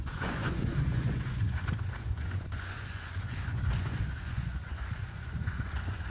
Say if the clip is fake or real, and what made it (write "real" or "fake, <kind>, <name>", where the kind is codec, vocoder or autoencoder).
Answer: fake, vocoder, Vocos